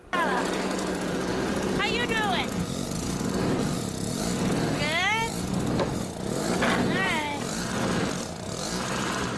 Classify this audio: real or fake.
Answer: real